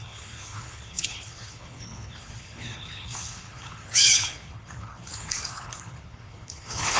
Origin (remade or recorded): remade